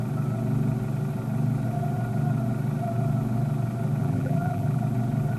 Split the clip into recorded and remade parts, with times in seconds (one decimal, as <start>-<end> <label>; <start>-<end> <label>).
0.0-4.0 recorded; 4.0-4.8 remade; 4.8-5.4 recorded